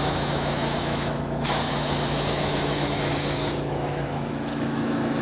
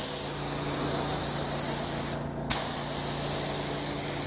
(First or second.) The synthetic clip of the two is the first